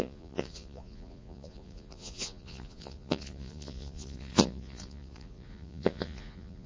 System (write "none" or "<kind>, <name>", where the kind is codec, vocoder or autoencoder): vocoder, Vocos